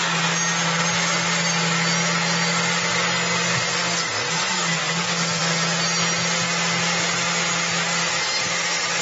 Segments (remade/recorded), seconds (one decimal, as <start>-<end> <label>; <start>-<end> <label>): 0.0-4.8 recorded; 4.8-5.4 remade; 5.4-9.0 recorded